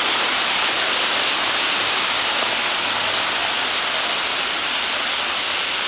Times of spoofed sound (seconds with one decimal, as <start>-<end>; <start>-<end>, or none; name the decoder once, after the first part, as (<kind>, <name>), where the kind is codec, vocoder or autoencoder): none